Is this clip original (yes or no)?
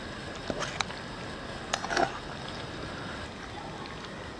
yes